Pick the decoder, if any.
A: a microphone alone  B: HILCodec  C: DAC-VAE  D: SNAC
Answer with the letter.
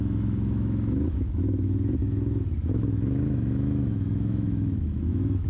C